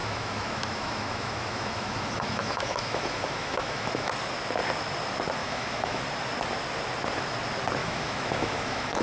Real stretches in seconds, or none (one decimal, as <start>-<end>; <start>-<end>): 4.1-5.4; 6.0-7.8